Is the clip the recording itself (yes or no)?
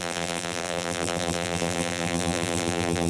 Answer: no